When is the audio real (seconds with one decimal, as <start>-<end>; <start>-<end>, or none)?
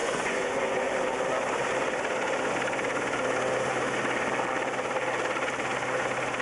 0.9-6.4